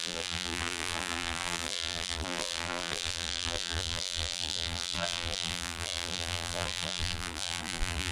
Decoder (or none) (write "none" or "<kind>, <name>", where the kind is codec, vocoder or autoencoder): vocoder, BigVGAN v2